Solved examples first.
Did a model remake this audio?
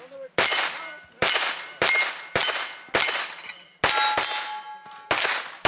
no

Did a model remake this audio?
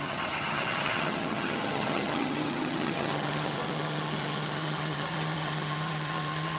yes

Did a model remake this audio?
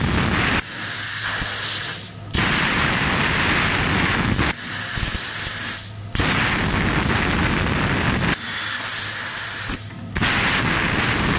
no